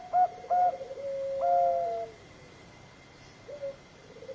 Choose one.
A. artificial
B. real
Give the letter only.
B